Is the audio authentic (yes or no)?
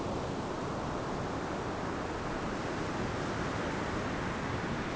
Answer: yes